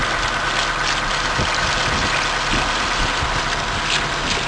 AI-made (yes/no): no